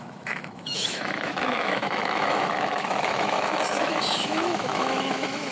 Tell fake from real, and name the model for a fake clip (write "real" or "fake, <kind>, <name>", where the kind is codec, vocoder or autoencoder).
fake, autoencoder, DAC-VAE